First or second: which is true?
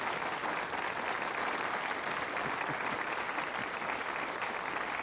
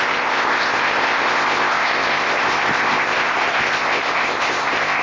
first